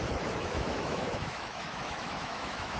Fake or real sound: fake